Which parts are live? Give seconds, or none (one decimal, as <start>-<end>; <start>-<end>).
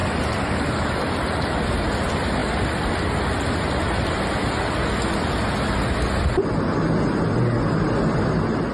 1.6-8.7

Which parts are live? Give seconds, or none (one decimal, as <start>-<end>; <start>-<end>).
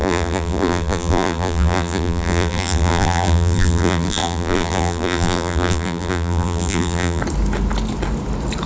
7.2-8.7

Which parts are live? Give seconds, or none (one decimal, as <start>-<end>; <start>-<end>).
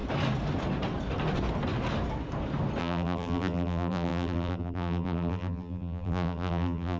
0.0-2.8